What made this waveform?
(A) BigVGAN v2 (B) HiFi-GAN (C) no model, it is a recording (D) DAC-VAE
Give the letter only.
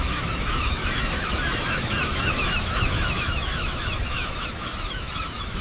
D